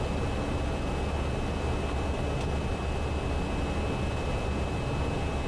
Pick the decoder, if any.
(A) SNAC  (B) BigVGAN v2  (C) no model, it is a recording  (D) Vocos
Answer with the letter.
C